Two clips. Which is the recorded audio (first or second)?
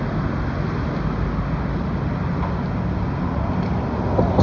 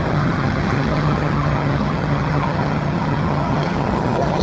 first